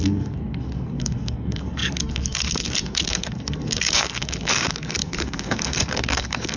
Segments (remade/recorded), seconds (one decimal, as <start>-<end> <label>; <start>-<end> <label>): 0.0-6.6 remade